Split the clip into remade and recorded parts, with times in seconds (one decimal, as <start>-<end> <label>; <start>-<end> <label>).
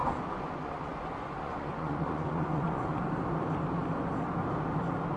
0.0-3.1 remade; 3.1-5.2 recorded